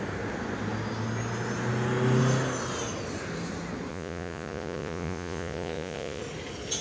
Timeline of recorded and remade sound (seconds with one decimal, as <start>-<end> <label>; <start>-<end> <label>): 0.0-3.9 recorded; 3.9-6.2 remade; 6.2-6.8 recorded